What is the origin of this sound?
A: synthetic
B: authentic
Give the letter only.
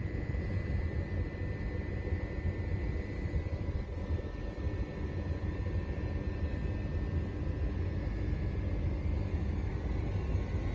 B